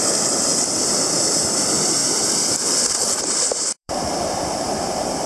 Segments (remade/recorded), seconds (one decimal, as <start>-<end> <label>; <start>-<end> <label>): 0.0-0.5 remade; 0.5-1.6 recorded; 1.6-2.0 remade; 2.0-2.9 recorded; 2.9-5.3 remade

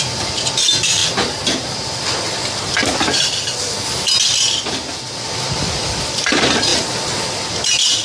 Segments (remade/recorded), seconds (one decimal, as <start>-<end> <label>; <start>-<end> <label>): 0.0-1.0 remade; 1.0-5.0 recorded; 5.0-6.7 remade; 6.7-7.5 recorded; 7.5-8.0 remade

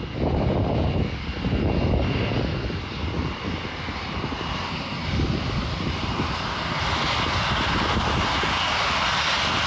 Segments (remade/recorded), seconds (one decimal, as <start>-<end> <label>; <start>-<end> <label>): 0.0-9.7 recorded

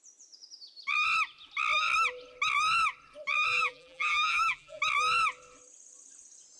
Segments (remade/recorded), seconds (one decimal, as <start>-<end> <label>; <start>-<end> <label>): 0.0-3.5 recorded; 3.5-4.8 remade; 4.8-6.6 recorded

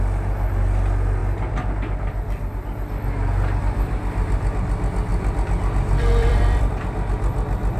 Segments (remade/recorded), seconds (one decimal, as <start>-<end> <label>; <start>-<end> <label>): 0.0-5.1 recorded; 5.1-6.7 remade; 6.7-7.8 recorded

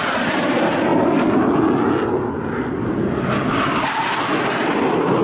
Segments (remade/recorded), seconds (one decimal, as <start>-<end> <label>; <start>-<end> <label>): 0.0-5.2 recorded

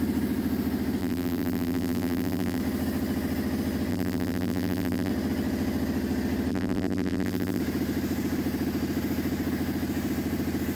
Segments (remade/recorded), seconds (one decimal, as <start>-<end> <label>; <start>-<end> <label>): 0.0-1.0 recorded; 1.0-2.6 remade; 2.6-3.9 recorded; 3.9-5.1 remade; 5.1-6.5 recorded; 6.5-7.6 remade; 7.6-10.8 recorded

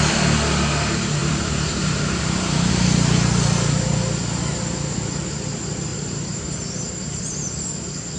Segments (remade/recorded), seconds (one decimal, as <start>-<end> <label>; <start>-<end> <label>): 0.0-1.2 recorded; 1.2-2.7 remade; 2.7-5.9 recorded; 5.9-7.3 remade; 7.3-8.2 recorded